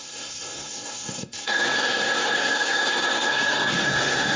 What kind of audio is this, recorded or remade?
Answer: remade